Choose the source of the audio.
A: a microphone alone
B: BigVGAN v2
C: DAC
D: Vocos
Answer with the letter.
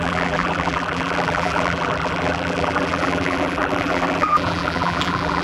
B